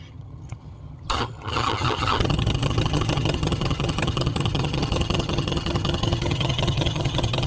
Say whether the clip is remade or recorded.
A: remade